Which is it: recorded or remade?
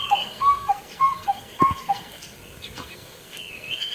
remade